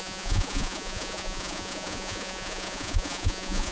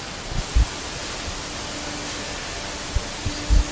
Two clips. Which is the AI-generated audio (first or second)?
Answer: first